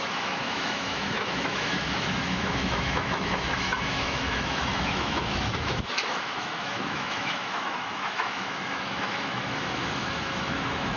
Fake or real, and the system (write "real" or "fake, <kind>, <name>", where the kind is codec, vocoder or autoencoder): fake, autoencoder, DAC-VAE